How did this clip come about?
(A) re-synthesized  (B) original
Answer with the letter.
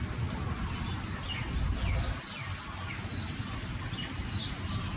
B